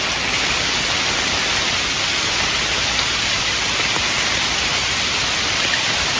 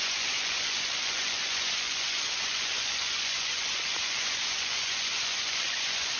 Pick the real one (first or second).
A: first